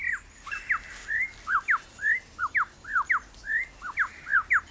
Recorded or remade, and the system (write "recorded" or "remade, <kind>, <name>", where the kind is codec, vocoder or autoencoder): recorded